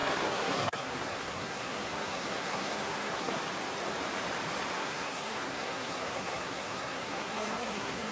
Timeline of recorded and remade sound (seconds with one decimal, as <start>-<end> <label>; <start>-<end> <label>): 0.0-3.4 remade; 3.4-4.8 recorded; 4.8-8.1 remade